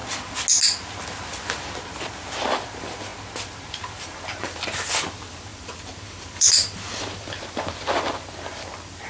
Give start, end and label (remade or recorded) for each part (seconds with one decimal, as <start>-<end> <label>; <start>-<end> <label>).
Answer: 0.0-2.5 recorded; 2.5-3.1 remade; 3.1-3.7 recorded; 3.7-9.1 remade